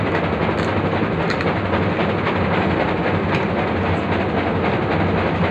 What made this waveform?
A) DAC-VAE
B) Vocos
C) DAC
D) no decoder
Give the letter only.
D